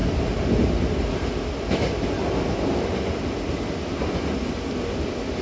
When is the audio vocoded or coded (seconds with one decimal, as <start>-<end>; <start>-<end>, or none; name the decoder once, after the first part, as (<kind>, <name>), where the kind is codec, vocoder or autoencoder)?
none